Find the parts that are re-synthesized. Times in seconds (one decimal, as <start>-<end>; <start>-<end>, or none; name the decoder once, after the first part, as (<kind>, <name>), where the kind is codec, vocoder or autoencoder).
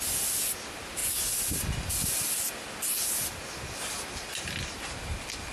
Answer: none